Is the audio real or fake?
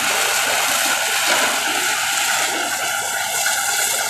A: real